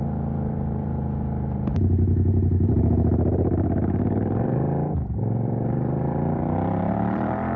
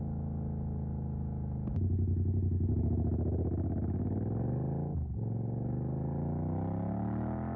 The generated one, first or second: first